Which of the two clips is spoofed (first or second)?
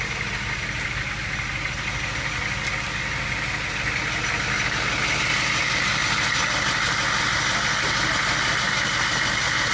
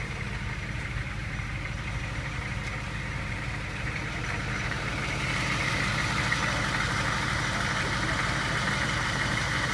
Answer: second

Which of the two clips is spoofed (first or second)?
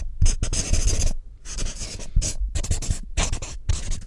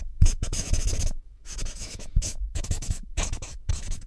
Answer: second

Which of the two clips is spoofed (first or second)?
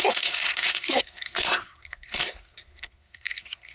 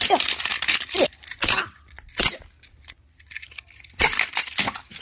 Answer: first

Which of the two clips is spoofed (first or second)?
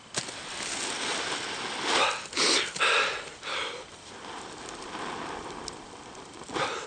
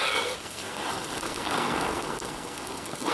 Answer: second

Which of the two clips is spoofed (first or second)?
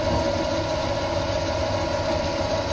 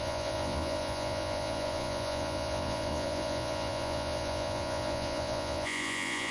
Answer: second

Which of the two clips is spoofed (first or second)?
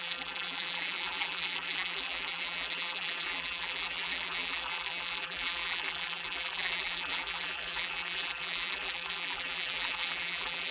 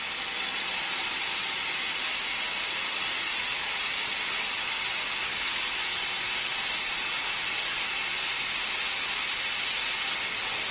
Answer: first